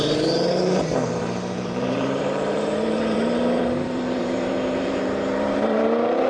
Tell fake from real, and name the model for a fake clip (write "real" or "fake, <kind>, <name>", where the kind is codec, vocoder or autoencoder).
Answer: fake, vocoder, BigVGAN v2